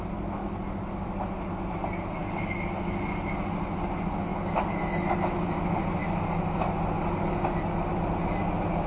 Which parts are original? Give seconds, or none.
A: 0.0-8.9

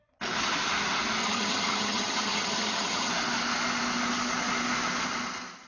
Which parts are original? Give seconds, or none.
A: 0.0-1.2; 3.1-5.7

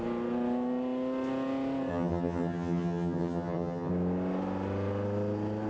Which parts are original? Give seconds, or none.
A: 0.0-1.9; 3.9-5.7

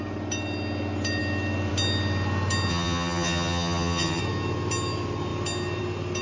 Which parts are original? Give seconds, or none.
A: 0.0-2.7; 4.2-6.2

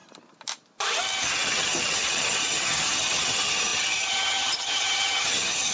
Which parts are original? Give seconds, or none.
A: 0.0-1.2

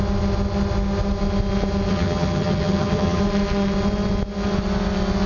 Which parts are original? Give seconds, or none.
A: 0.0-1.9; 3.2-5.3